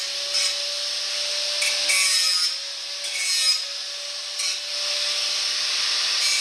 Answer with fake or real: real